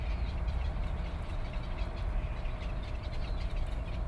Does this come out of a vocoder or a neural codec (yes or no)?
no